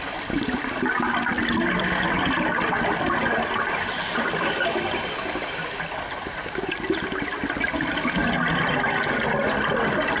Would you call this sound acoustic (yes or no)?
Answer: yes